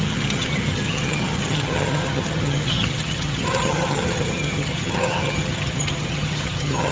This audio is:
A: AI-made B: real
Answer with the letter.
A